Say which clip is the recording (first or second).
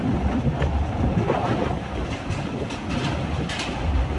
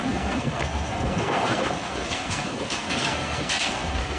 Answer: first